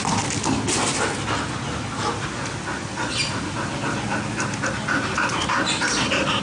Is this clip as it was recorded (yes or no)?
yes